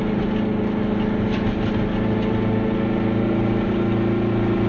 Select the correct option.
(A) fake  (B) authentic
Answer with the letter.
B